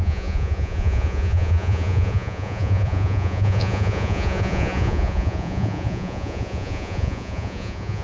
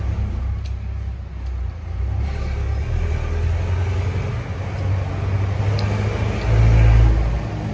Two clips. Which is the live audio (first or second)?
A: second